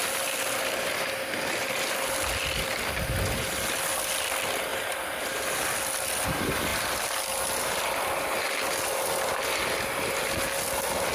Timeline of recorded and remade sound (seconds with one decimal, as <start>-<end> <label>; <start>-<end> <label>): 0.0-6.7 recorded; 6.7-7.8 remade; 7.8-11.1 recorded